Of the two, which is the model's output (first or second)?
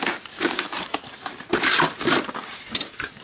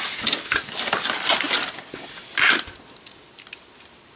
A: first